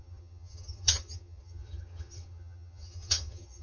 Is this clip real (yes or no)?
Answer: no